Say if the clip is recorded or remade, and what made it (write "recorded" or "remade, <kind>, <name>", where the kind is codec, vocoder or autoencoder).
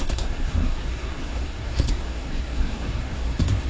remade, codec, SNAC